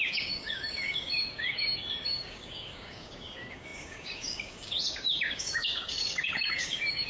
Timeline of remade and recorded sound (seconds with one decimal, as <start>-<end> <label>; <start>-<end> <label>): 0.0-7.1 remade